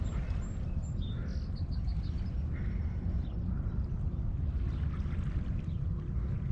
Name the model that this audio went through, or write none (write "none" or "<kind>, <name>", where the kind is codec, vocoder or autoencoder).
none